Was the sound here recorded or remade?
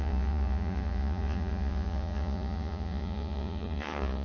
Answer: remade